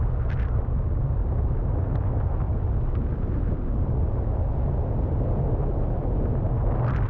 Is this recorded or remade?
recorded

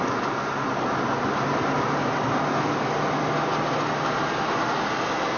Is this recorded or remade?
recorded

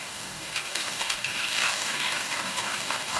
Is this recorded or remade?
remade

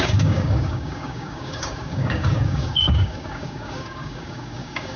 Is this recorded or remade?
remade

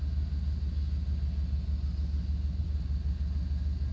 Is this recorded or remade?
recorded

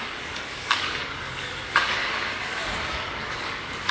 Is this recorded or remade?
remade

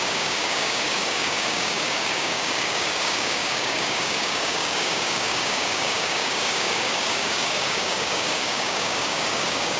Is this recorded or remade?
remade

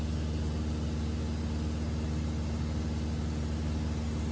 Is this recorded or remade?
recorded